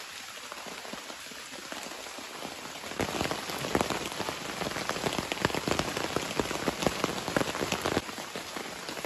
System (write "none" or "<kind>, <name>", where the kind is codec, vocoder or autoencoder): none